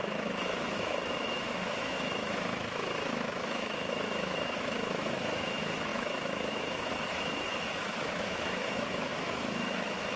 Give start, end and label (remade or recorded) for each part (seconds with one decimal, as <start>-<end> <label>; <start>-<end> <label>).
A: 0.0-10.2 remade